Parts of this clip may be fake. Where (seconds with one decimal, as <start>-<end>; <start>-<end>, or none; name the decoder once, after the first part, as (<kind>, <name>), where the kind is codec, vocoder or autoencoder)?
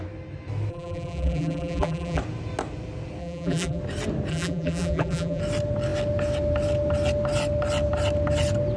0.7-2.2 (vocoder, BigVGAN v2); 3.2-3.8; 4.3-5.4